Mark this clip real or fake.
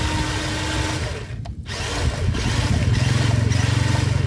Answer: real